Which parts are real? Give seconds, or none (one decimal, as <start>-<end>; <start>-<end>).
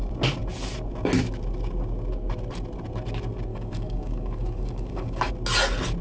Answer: 0.0-3.5; 5.3-6.0